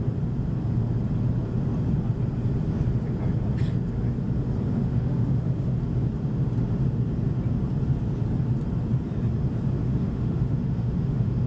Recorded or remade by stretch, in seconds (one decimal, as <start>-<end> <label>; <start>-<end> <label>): 0.0-4.8 recorded; 4.8-5.8 remade; 5.8-9.8 recorded; 9.8-11.5 remade